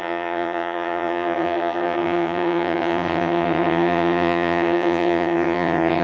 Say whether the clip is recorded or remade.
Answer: remade